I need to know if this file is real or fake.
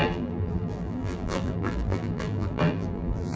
fake